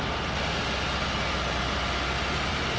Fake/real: real